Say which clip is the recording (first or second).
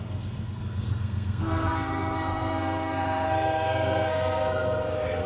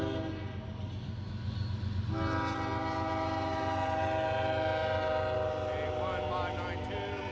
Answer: second